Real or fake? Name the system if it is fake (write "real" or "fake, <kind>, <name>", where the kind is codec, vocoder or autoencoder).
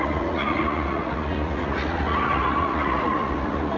fake, vocoder, Vocos